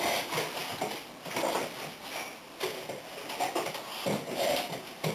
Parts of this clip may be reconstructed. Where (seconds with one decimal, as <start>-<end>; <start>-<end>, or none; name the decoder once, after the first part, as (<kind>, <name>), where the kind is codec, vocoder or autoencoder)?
0.0-0.6 (vocoder, BigVGAN v2); 3.7-5.1